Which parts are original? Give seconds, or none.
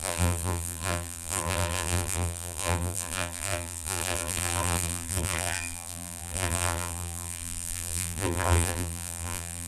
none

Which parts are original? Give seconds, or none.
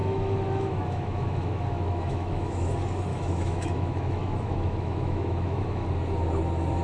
2.7-3.1; 5.9-6.8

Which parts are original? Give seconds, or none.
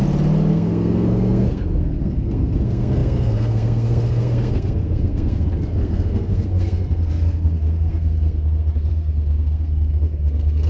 0.0-0.5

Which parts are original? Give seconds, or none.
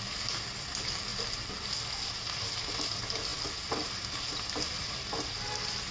0.0-5.9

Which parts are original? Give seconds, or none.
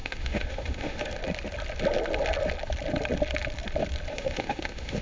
1.2-4.1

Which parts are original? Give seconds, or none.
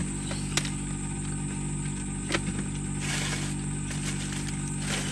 0.0-5.1